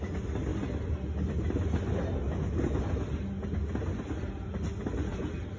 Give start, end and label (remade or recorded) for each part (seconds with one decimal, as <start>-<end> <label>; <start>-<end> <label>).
0.0-5.6 recorded